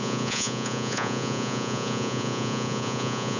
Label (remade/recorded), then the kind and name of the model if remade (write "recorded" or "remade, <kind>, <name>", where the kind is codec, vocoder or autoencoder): remade, vocoder, Vocos